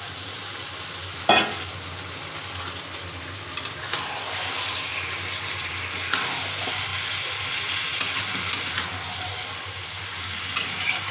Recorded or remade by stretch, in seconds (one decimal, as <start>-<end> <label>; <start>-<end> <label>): 0.0-4.9 recorded; 4.9-5.7 remade; 5.7-7.9 recorded; 7.9-8.5 remade; 8.5-11.1 recorded